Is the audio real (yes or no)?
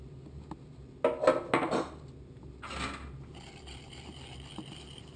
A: yes